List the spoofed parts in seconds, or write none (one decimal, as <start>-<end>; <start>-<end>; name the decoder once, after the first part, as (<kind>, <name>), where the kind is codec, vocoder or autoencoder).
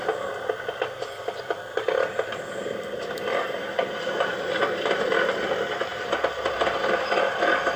0.0-7.8 (vocoder, BigVGAN v2)